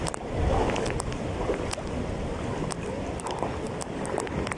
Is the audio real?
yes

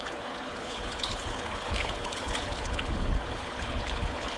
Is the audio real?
no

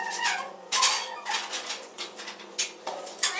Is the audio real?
no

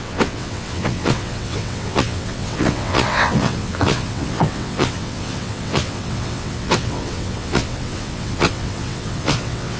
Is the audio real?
no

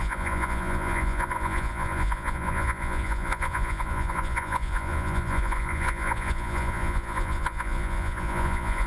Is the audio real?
no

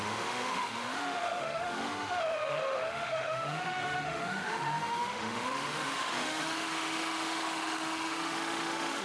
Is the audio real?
no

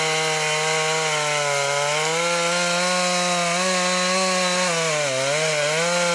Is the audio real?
yes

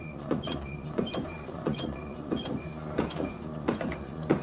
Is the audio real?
no